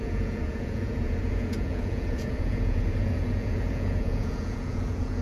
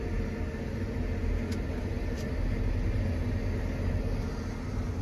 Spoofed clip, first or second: first